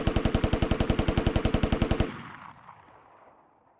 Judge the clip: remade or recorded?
recorded